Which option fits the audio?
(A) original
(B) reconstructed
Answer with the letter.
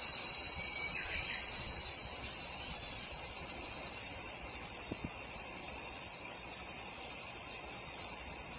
B